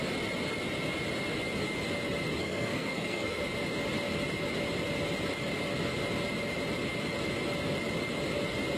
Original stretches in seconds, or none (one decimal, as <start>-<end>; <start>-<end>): 0.0-2.4; 3.4-8.8